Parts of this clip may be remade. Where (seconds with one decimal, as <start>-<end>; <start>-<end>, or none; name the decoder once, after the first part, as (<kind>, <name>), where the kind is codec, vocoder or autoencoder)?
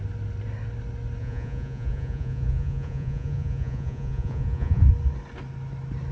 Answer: 1.2-4.9 (vocoder, Vocos)